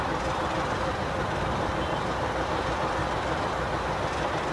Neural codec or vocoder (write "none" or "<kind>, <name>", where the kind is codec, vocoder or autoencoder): none